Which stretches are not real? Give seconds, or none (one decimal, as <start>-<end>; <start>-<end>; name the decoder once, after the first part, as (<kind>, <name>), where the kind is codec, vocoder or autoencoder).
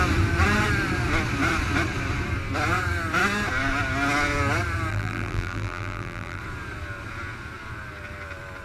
4.9-6.4 (vocoder, BigVGAN v2)